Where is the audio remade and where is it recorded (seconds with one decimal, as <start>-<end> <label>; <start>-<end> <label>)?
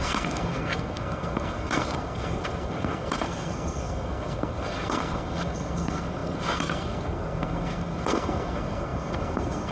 0.0-9.7 remade